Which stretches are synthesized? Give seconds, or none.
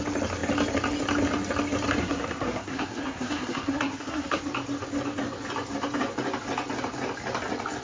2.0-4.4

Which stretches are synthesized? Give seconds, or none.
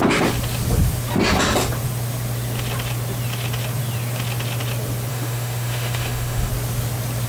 5.1-6.5